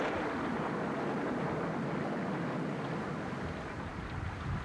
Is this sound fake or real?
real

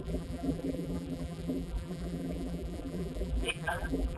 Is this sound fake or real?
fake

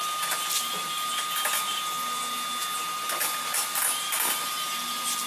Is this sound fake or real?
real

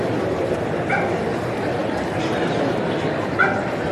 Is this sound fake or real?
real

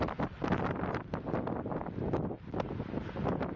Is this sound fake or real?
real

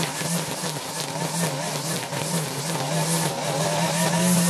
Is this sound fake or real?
real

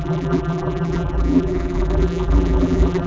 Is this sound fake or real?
fake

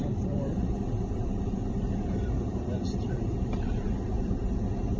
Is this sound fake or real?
fake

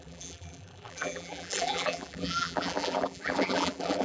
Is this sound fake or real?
fake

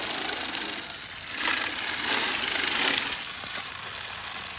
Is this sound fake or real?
real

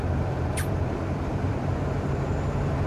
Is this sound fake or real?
fake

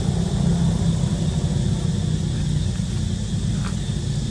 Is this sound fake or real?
real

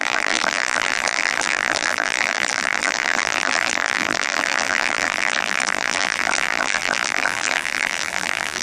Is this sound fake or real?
fake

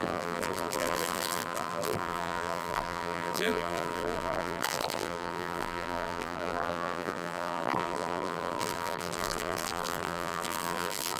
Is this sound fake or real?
fake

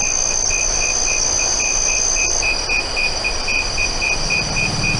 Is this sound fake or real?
real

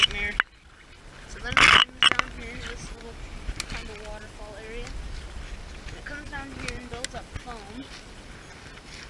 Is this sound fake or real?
real